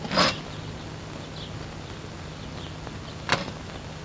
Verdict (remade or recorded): recorded